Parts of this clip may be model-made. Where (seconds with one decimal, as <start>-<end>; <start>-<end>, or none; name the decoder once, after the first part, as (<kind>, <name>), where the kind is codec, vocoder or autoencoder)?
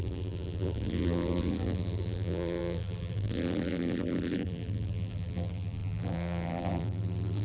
0.0-7.4 (vocoder, BigVGAN v2)